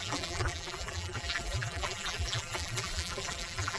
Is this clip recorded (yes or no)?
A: no